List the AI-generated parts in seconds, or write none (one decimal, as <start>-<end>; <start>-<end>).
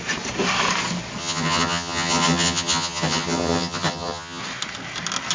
1.2-4.4